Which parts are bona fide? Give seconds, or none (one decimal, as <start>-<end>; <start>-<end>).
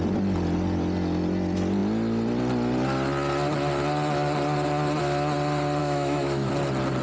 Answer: 0.0-5.8; 6.5-7.0